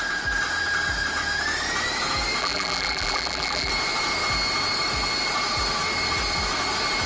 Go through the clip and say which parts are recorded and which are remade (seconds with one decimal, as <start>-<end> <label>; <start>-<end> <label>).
0.0-2.4 recorded; 2.4-3.7 remade; 3.7-7.1 recorded